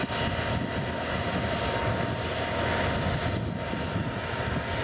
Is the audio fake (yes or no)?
no